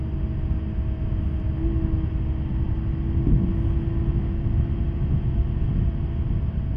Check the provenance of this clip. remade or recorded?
recorded